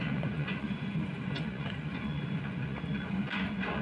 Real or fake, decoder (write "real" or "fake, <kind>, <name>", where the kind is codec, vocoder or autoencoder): fake, vocoder, Vocos